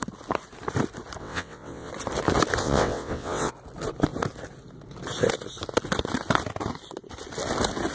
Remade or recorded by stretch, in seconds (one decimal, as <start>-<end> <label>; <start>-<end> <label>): 0.0-1.2 recorded; 1.2-1.9 remade; 1.9-2.6 recorded; 2.6-3.5 remade; 3.5-7.9 recorded